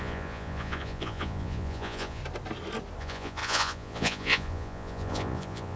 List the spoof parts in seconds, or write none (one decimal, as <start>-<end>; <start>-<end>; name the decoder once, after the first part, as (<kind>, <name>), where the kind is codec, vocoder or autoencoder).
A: 0.0-2.2 (vocoder, Vocos); 3.0-5.8